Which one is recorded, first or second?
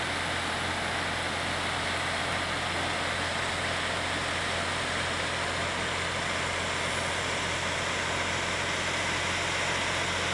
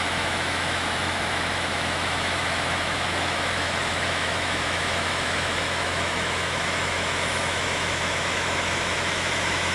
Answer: first